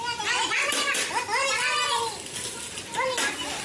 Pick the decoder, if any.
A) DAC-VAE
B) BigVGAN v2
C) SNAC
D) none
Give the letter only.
D